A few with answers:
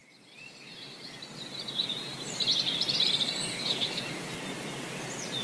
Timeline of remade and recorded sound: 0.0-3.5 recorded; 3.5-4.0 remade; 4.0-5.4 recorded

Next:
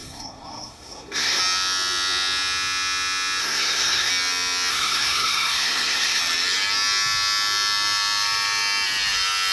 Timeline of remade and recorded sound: 0.0-1.4 remade; 1.4-3.4 recorded; 3.4-4.1 remade; 4.1-4.7 recorded; 4.7-6.2 remade; 6.2-9.5 recorded

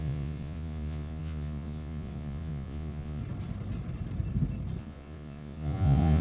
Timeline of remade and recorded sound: 0.0-3.2 remade; 3.2-4.8 recorded; 4.8-6.2 remade

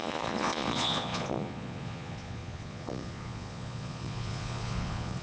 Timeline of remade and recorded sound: 0.0-5.2 remade

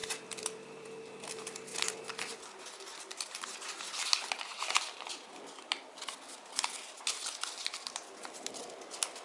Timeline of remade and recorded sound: 0.0-1.0 remade; 1.0-9.2 recorded

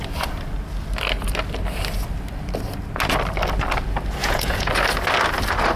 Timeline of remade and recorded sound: 0.0-4.2 recorded; 4.2-4.7 remade; 4.7-5.8 recorded

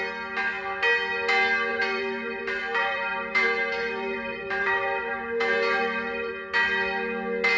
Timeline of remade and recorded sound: 0.0-1.7 recorded; 1.7-6.3 remade; 6.3-7.6 recorded